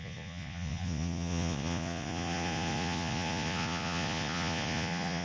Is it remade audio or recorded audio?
remade